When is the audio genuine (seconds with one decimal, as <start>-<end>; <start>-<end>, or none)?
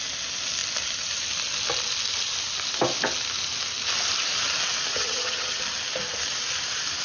0.0-4.9; 5.6-7.0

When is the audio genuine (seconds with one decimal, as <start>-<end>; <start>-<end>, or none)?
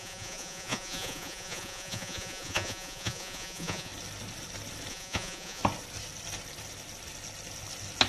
3.9-4.9; 5.6-8.1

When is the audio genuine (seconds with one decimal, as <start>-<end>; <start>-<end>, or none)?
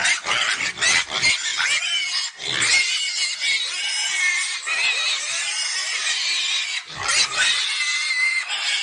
0.0-8.8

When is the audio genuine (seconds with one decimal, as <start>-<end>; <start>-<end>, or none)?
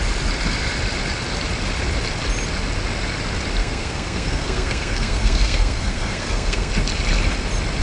0.0-3.6; 6.7-7.8